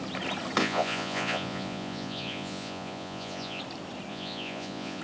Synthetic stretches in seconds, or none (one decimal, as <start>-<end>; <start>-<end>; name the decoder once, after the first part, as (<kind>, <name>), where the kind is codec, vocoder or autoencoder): 0.6-3.6 (vocoder, Vocos); 4.1-5.0

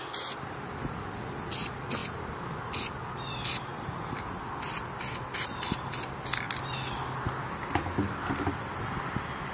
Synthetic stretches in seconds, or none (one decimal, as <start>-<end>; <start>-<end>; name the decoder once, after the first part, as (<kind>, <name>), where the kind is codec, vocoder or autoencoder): none

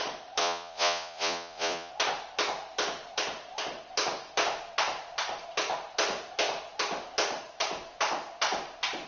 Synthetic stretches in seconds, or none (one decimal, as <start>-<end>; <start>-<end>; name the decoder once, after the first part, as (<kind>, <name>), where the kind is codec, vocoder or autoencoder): 0.4-1.9 (vocoder, Vocos)